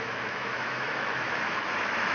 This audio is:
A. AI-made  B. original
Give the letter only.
A